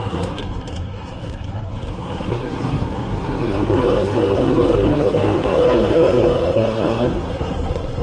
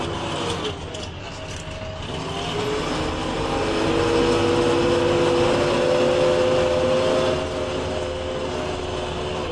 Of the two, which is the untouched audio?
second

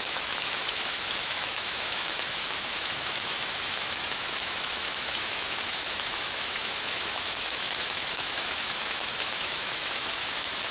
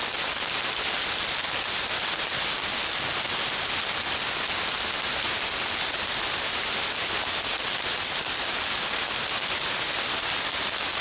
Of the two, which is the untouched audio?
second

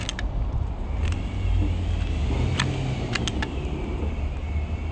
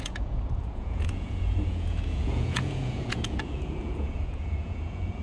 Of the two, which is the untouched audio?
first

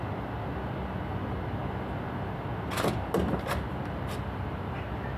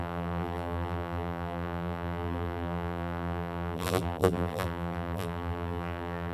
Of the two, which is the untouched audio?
first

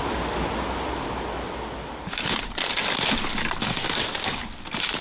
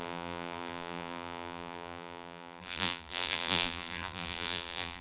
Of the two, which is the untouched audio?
first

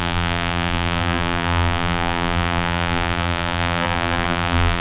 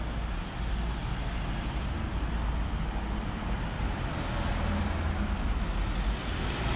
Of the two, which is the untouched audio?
second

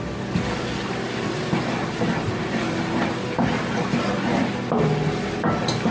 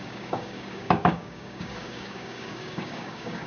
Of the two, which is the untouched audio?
first